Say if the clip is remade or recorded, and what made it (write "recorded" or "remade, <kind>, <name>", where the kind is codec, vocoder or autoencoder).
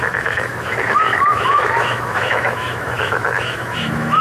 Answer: remade, autoencoder, DAC-VAE